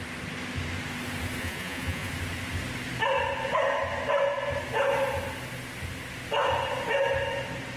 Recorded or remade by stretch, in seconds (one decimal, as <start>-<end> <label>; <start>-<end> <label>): 0.0-1.4 recorded; 1.4-2.1 remade; 2.1-7.8 recorded